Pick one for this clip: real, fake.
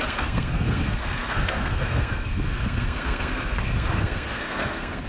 fake